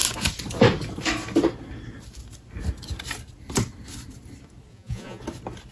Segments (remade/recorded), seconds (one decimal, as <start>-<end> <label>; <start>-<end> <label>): 0.0-4.7 recorded; 4.7-5.2 remade; 5.2-5.7 recorded